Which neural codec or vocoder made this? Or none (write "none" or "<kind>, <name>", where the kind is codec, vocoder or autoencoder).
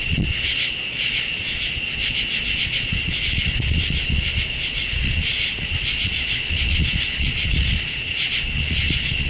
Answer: vocoder, Vocos